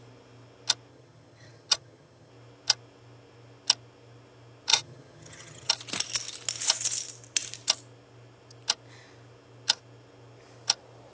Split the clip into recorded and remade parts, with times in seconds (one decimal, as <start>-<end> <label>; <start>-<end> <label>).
0.0-0.9 recorded; 0.9-2.3 remade; 2.3-4.7 recorded; 4.7-5.7 remade; 5.7-11.1 recorded